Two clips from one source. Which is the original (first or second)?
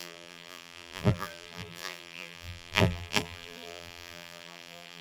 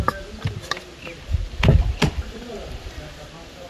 second